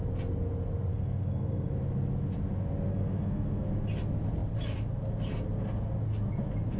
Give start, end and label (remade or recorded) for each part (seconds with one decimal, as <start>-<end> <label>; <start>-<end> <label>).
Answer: 0.0-0.9 recorded; 0.9-1.7 remade; 1.7-2.9 recorded; 2.9-3.7 remade; 3.7-6.8 recorded